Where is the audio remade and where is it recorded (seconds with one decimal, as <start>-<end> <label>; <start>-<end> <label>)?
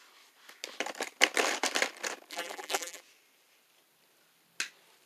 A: 0.0-2.3 recorded; 2.3-3.0 remade; 3.0-5.1 recorded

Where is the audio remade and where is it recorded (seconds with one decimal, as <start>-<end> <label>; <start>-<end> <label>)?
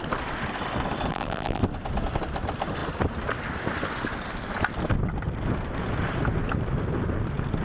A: 0.0-1.1 recorded; 1.1-1.6 remade; 1.6-7.6 recorded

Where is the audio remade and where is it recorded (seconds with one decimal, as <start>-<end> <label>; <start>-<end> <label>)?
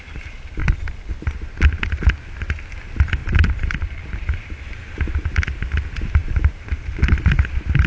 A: 0.0-0.6 recorded; 0.6-1.1 remade; 1.1-3.2 recorded; 3.2-4.6 remade; 4.6-6.2 recorded; 6.2-7.2 remade; 7.2-7.9 recorded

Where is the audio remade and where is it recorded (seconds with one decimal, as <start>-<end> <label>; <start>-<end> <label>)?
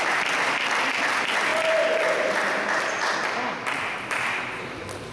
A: 0.0-5.1 recorded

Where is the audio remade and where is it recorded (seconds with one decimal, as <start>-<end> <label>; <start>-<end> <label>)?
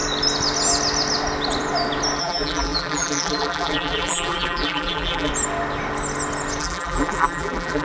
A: 0.0-2.2 recorded; 2.2-5.3 remade; 5.3-6.6 recorded; 6.6-7.8 remade